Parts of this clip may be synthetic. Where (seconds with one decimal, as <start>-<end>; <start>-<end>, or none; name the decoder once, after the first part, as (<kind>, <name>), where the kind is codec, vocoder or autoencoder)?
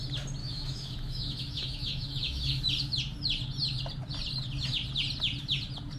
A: 0.4-2.6 (autoencoder, DAC-VAE)